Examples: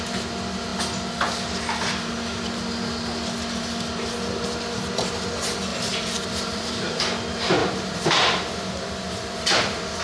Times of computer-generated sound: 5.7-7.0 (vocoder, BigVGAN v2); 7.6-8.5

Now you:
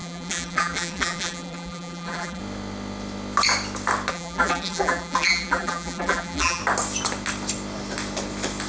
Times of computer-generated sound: 0.0-2.4 (vocoder, BigVGAN v2); 4.1-6.6